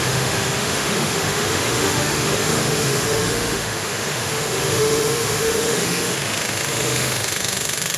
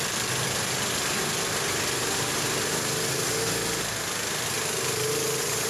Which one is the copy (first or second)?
first